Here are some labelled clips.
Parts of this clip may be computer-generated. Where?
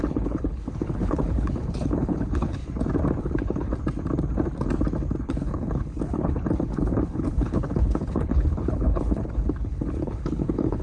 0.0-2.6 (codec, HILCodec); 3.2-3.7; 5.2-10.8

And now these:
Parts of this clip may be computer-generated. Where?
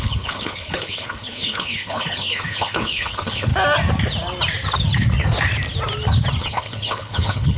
0.0-3.5 (codec, HILCodec); 6.4-7.6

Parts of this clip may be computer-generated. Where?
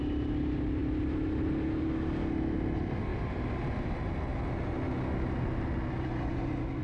none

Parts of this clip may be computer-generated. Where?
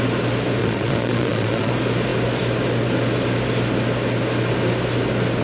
0.6-1.7 (vocoder, Vocos)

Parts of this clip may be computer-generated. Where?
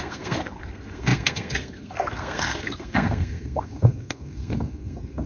0.0-5.3 (codec, SNAC)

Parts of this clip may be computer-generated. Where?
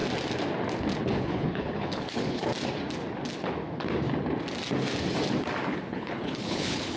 1.0-2.5 (codec, HILCodec); 5.9-7.0